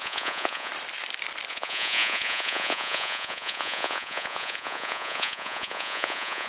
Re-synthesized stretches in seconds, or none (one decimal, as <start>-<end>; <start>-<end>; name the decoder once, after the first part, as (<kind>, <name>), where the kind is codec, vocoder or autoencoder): 0.0-0.7 (vocoder, Vocos); 1.5-6.5